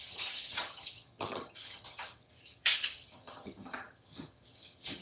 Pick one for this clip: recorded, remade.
remade